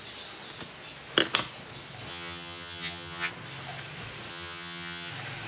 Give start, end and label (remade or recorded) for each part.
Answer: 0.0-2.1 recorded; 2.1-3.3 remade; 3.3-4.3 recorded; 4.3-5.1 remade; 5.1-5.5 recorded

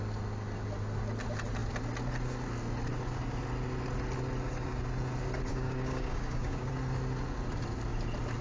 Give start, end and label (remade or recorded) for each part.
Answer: 0.0-5.5 recorded; 5.5-6.7 remade; 6.7-8.4 recorded

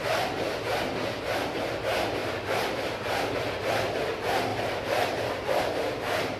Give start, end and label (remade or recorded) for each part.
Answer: 0.0-6.4 recorded

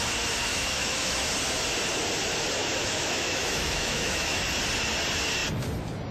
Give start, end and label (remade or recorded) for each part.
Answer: 0.0-0.5 recorded; 0.5-1.3 remade; 1.3-2.6 recorded; 2.6-4.4 remade; 4.4-6.1 recorded

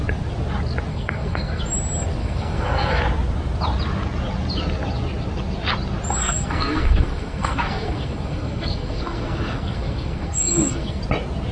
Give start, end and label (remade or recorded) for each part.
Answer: 0.0-0.9 recorded; 0.9-1.6 remade; 1.6-2.2 recorded; 2.2-3.0 remade; 3.0-6.2 recorded; 6.2-11.0 remade; 11.0-11.5 recorded